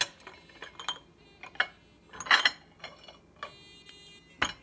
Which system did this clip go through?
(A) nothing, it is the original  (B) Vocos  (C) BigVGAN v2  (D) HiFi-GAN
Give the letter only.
A